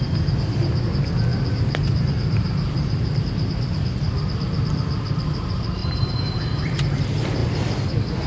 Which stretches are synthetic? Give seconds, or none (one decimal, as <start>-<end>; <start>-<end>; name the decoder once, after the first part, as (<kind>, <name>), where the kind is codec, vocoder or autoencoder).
1.3-3.1 (vocoder, BigVGAN v2); 5.8-6.8